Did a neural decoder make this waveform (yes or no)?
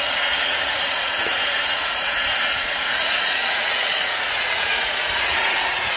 yes